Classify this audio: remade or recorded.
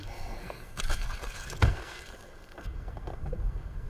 remade